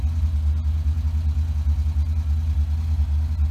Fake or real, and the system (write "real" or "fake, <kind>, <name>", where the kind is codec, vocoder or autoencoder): real